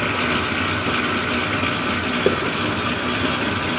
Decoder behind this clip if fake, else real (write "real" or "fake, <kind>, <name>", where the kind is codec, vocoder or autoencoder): real